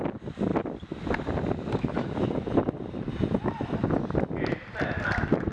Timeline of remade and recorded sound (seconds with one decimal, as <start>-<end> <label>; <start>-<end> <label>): 0.0-5.5 recorded